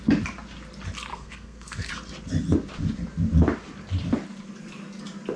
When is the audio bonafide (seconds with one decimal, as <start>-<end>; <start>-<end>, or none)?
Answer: 0.0-1.1; 1.9-5.4